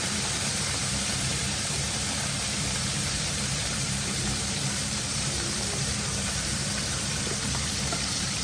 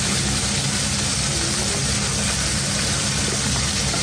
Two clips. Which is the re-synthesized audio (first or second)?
first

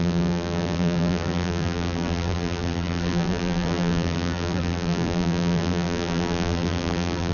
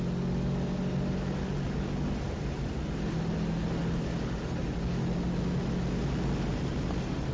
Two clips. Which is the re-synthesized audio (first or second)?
first